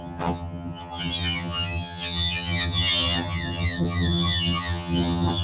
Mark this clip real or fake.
fake